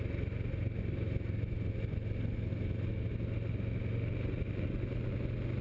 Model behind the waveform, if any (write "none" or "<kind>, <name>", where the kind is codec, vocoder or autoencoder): none